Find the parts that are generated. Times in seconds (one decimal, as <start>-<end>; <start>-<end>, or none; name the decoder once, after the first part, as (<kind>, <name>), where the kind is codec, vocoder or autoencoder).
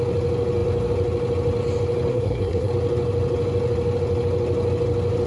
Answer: 2.1-2.7 (codec, SNAC)